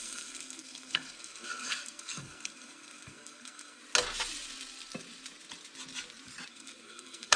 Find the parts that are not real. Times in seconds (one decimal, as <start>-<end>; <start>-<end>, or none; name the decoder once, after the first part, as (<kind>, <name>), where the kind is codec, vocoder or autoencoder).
0.0-3.8 (codec, SNAC); 6.5-7.4